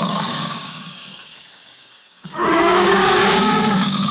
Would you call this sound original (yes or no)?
no